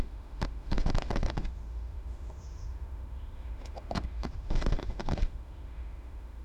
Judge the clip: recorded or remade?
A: remade